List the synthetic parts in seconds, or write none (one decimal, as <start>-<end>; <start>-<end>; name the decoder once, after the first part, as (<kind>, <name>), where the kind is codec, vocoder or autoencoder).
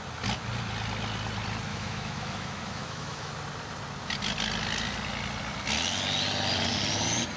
1.7-3.3 (autoencoder, DAC-VAE)